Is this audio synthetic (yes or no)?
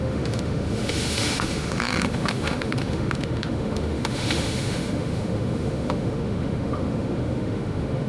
yes